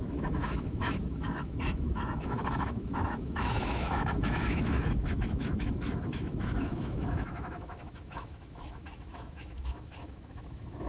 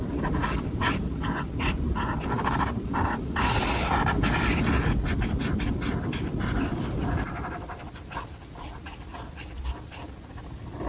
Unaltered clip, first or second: second